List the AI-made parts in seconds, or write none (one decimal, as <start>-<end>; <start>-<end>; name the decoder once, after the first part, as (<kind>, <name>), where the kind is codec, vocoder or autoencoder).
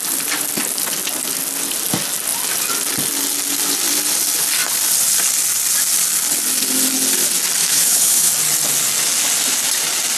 7.6-8.3 (autoencoder, DAC-VAE)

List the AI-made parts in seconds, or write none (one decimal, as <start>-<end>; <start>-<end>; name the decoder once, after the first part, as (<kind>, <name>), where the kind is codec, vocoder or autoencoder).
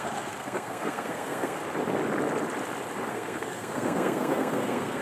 0.0-1.6 (codec, SNAC); 3.1-5.0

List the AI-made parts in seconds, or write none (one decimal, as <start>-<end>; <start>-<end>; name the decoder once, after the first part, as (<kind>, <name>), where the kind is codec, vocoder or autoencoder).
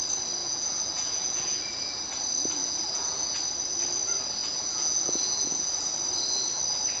0.4-1.6 (vocoder, Vocos); 2.6-3.4; 4.4-5.7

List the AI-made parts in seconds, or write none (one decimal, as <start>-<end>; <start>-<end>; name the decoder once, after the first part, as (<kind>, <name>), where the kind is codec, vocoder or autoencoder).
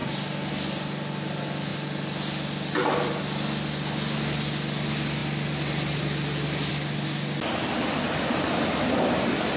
none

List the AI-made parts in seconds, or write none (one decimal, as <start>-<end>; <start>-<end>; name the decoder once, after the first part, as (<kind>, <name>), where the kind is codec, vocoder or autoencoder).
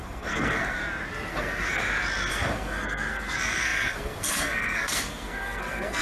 0.0-0.8 (codec, SNAC); 1.3-1.8; 2.3-6.0